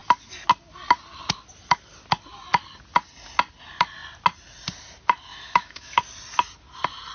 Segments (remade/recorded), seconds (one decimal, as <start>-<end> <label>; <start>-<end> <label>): 0.0-5.3 recorded; 5.3-6.0 remade; 6.0-7.1 recorded